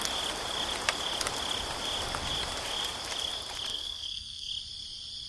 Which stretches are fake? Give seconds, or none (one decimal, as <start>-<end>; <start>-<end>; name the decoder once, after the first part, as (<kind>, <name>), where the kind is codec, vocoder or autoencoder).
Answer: 3.7-4.5 (codec, SNAC)